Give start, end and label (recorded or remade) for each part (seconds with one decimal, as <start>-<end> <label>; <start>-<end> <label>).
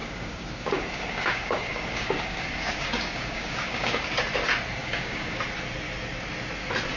0.0-4.2 remade; 4.2-4.8 recorded; 4.8-5.4 remade; 5.4-7.0 recorded